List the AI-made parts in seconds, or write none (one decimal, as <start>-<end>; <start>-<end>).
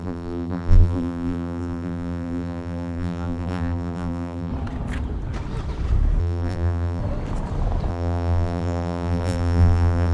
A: 0.0-4.5; 6.2-7.0; 7.9-10.1